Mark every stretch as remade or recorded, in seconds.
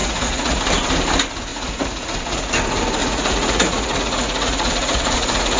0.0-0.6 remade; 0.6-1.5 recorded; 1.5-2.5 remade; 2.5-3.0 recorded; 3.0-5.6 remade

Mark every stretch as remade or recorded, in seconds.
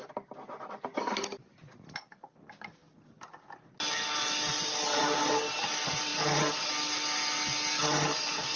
0.0-8.6 recorded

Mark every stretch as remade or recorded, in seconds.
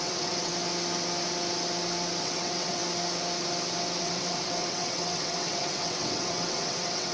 0.0-0.5 remade; 0.5-2.2 recorded; 2.2-2.8 remade; 2.8-4.0 recorded; 4.0-7.1 remade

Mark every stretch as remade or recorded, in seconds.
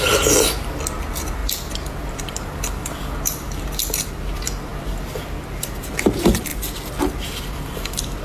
0.0-8.2 recorded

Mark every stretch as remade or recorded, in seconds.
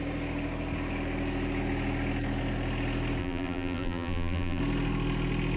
0.0-3.2 recorded; 3.2-4.6 remade; 4.6-5.6 recorded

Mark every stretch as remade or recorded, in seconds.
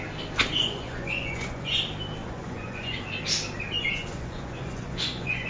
0.0-0.6 recorded; 0.6-1.8 remade; 1.8-2.2 recorded; 2.2-3.0 remade; 3.0-3.8 recorded; 3.8-5.5 remade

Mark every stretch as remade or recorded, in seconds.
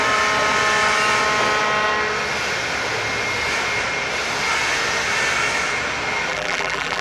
0.0-6.3 recorded; 6.3-7.0 remade